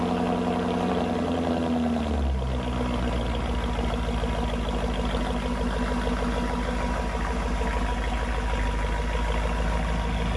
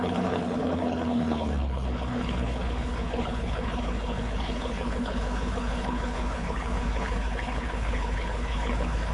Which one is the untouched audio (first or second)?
first